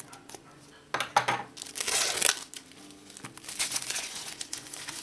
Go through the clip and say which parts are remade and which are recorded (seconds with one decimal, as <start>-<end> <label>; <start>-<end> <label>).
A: 0.0-0.7 remade; 0.7-3.6 recorded; 3.6-5.0 remade